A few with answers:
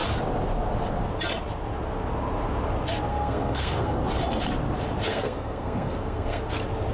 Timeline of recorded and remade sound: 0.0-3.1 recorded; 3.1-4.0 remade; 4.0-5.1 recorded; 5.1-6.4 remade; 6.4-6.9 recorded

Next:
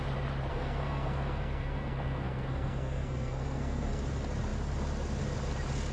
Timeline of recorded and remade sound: 0.0-0.5 recorded; 0.5-4.0 remade; 4.0-5.9 recorded

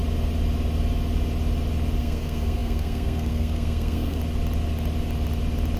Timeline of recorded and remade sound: 0.0-2.0 recorded; 2.0-4.2 remade; 4.2-5.8 recorded

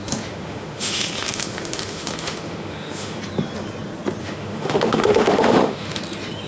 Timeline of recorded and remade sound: 0.0-3.2 remade; 3.2-4.2 recorded; 4.2-6.0 remade; 6.0-6.5 recorded

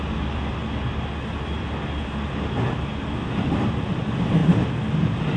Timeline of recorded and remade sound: 0.0-5.4 recorded

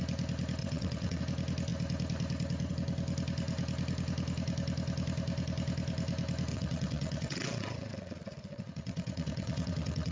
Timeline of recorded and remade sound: 0.0-0.6 recorded; 0.6-1.2 remade; 1.2-6.5 recorded; 6.5-10.1 remade

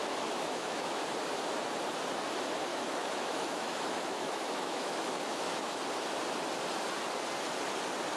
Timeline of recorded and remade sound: 0.0-1.0 remade; 1.0-2.7 recorded; 2.7-5.8 remade; 5.8-8.2 recorded